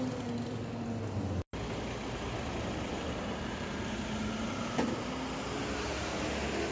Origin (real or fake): real